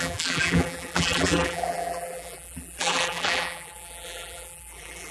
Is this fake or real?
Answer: fake